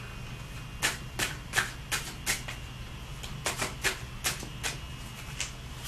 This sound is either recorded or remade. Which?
recorded